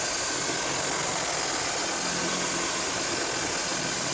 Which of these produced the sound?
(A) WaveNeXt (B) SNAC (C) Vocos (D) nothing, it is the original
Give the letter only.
D